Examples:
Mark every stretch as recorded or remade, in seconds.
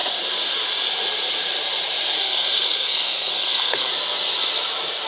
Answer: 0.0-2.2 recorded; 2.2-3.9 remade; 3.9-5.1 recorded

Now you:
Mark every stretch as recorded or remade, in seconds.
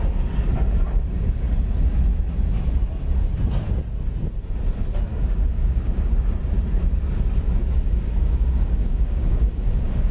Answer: 0.0-5.1 recorded; 5.1-6.1 remade; 6.1-7.6 recorded; 7.6-10.1 remade